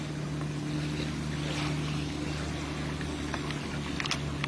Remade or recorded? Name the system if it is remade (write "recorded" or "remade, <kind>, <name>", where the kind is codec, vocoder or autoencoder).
recorded